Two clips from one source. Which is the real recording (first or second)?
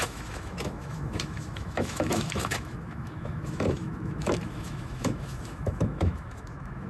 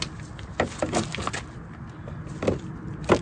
second